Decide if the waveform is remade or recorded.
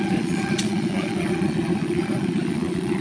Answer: remade